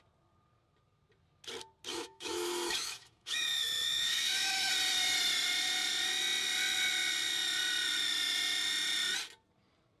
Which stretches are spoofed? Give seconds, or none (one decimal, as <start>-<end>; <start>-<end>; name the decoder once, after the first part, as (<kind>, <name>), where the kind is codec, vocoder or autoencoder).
1.9-4.7 (autoencoder, DAC-VAE)